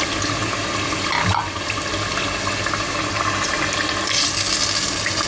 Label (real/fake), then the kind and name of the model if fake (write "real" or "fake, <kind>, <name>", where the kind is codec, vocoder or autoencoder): real